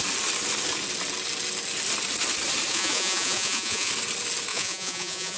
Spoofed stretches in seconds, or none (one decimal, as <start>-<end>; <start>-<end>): 2.7-3.9; 4.5-5.4